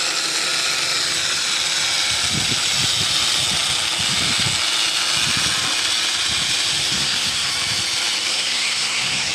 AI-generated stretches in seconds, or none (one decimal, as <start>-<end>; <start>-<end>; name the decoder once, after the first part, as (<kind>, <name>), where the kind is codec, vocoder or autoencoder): 6.8-7.5 (codec, SNAC); 8.3-9.3